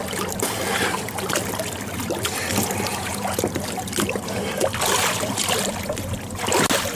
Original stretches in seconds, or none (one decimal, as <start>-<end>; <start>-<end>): 0.0-2.9; 3.4-7.0